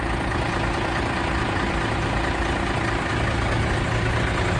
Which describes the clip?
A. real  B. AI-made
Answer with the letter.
A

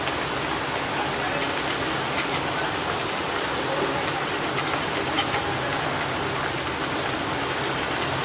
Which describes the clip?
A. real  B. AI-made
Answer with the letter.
A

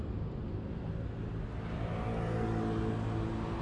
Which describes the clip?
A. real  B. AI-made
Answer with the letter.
A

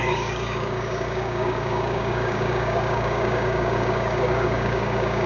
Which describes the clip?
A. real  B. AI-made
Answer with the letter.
B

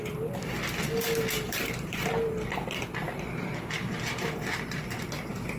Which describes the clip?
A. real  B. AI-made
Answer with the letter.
A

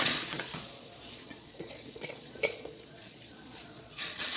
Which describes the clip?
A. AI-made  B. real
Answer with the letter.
A